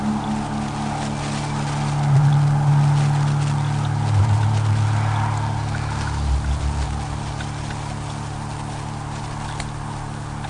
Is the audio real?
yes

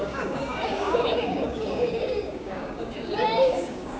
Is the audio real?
no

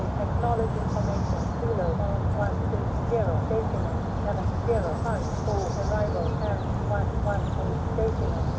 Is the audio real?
yes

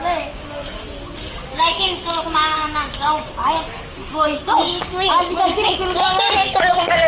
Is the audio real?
no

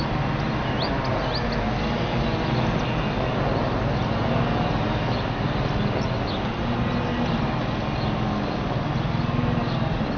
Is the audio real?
yes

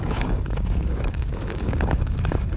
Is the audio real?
no